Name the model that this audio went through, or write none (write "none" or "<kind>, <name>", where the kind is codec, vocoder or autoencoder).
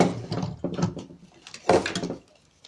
none